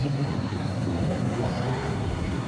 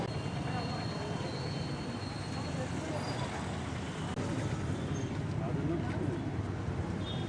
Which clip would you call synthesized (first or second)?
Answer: first